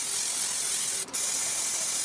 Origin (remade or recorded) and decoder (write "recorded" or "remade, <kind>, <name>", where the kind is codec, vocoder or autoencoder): recorded